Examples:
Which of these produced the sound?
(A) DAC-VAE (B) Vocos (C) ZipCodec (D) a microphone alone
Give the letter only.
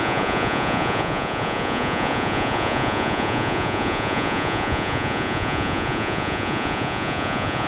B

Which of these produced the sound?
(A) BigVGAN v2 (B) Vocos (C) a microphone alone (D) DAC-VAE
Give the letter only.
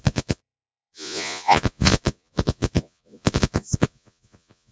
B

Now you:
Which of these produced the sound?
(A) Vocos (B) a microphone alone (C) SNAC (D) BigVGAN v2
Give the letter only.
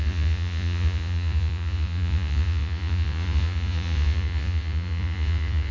A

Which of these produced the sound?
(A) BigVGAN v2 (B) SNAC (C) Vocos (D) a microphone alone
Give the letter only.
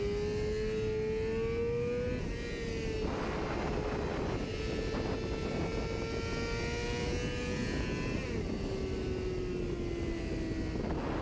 D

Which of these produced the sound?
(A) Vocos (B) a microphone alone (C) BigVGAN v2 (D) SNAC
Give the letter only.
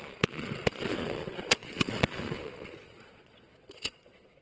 A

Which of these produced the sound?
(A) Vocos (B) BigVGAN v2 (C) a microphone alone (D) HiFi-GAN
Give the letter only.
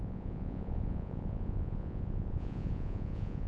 A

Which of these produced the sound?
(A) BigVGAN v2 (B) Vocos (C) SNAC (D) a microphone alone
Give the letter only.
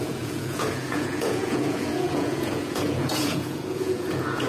B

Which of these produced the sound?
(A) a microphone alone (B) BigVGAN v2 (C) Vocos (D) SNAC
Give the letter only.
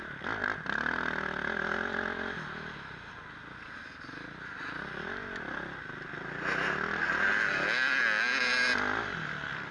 A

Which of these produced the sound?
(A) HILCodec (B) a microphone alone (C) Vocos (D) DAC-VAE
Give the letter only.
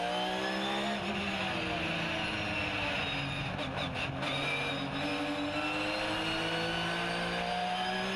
B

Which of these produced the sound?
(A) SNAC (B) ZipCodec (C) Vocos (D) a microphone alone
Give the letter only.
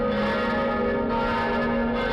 D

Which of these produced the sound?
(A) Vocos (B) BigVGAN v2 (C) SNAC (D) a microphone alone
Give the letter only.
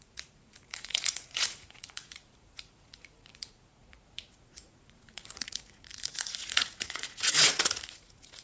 A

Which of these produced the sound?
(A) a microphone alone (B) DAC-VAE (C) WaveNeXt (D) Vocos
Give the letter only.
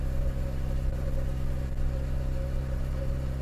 A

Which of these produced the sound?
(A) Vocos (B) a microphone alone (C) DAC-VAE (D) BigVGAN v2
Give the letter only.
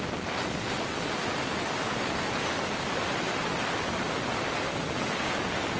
B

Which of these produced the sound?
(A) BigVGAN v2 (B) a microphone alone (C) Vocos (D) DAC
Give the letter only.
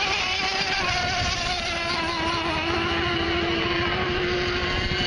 B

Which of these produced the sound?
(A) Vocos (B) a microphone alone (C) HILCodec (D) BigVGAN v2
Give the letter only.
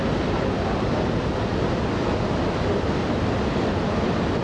B